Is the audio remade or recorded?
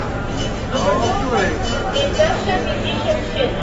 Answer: recorded